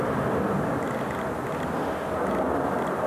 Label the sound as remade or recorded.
recorded